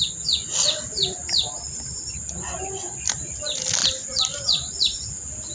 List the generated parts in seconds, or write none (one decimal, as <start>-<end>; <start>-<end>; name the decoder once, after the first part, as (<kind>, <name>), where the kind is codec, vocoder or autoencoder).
none